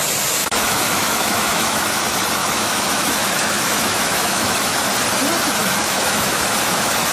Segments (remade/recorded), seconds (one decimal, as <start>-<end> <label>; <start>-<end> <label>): 0.0-0.4 recorded; 0.4-2.0 remade; 2.0-2.4 recorded; 2.4-4.9 remade; 4.9-5.6 recorded; 5.6-7.1 remade